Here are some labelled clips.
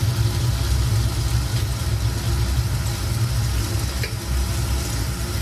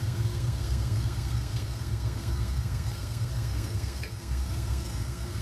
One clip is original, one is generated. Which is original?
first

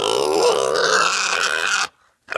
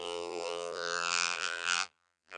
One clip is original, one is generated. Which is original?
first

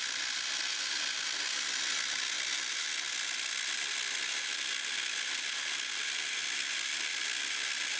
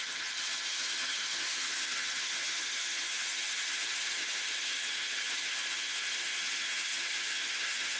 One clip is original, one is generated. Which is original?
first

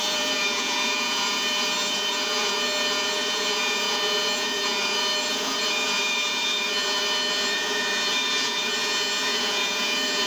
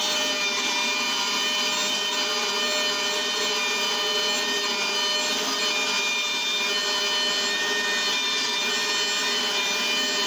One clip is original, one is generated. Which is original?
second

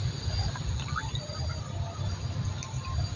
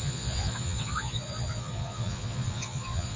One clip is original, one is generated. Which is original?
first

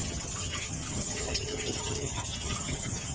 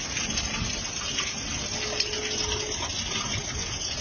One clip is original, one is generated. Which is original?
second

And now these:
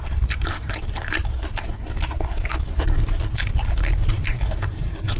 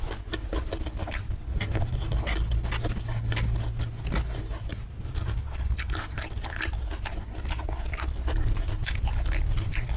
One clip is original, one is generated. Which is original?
second